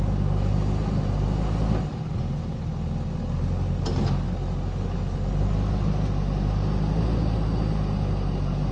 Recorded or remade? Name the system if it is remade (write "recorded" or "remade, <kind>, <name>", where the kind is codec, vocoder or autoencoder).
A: recorded